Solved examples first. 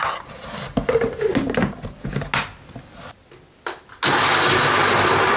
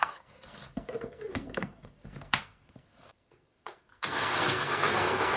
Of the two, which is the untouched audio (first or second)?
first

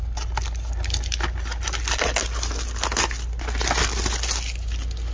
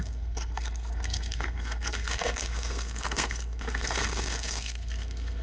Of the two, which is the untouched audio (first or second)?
first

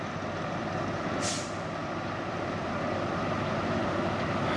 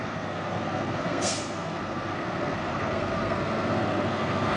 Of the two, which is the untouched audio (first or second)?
first